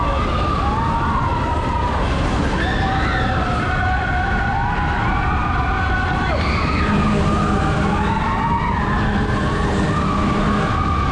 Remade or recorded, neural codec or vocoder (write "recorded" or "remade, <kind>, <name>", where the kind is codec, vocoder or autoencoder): recorded